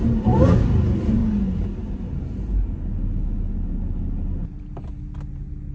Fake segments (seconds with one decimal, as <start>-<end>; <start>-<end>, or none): none

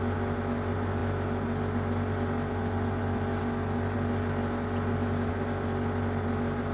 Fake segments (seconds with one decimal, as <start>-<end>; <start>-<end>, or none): none

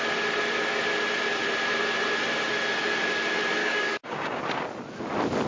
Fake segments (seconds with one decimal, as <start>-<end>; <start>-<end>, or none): 3.6-4.4